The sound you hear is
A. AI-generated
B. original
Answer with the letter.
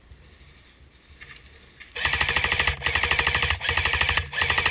A